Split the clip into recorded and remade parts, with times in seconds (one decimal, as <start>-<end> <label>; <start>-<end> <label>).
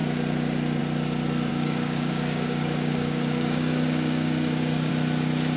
0.0-1.5 recorded; 1.5-4.9 remade; 4.9-5.6 recorded